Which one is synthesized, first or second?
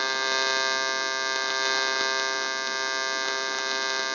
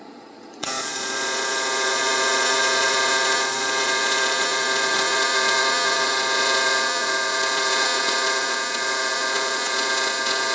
second